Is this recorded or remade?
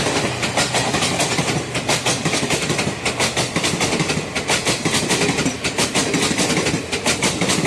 recorded